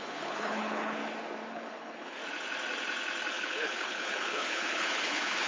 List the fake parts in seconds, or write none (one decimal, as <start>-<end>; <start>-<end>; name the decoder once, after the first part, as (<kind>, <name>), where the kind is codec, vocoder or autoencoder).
0.0-1.0 (codec, HILCodec); 1.5-2.2; 3.3-5.5